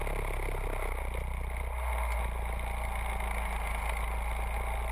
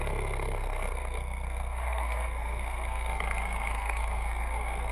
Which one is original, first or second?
first